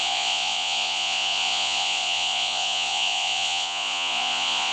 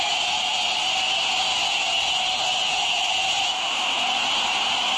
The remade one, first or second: first